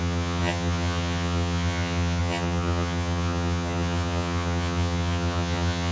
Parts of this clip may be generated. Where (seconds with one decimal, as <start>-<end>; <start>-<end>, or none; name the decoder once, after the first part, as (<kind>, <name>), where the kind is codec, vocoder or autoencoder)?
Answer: 0.0-5.9 (vocoder, HiFi-GAN)

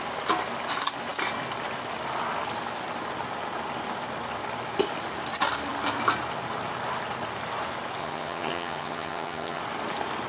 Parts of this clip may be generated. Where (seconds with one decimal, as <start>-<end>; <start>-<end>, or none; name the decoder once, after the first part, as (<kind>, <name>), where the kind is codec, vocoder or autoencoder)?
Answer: 8.0-9.6 (vocoder, HiFi-GAN)

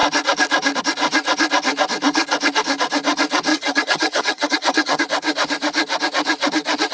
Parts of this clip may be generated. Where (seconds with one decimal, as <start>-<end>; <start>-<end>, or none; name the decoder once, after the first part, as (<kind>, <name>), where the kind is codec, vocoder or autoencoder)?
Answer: 3.5-5.0 (vocoder, HiFi-GAN)